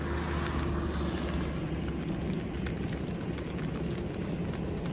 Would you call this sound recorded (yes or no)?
yes